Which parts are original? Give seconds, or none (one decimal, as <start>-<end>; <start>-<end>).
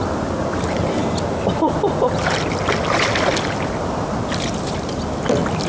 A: 0.0-5.7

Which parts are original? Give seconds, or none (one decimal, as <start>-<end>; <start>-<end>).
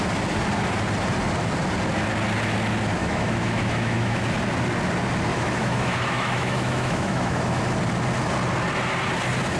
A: 0.0-3.0; 4.2-5.3; 7.6-9.6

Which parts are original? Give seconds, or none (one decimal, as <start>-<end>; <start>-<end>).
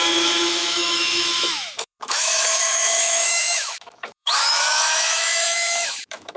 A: none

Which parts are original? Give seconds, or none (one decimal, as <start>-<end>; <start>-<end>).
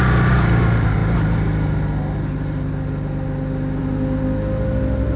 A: 0.0-5.2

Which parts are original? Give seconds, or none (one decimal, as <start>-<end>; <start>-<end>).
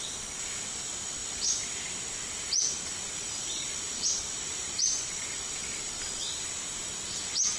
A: 0.0-7.6